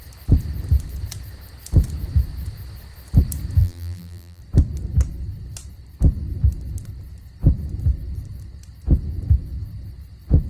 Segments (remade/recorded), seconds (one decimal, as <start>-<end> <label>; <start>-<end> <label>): 0.0-3.6 recorded; 3.6-4.4 remade; 4.4-10.5 recorded